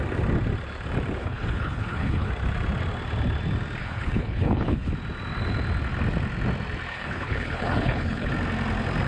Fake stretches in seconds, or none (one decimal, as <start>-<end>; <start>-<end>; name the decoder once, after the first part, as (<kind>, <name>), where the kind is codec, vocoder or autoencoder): 1.2-2.3 (codec, HILCodec); 3.8-4.9; 6.9-8.3